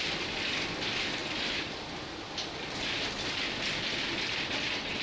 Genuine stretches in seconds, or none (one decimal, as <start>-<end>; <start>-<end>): 0.0-5.0